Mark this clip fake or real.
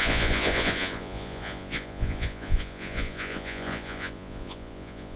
fake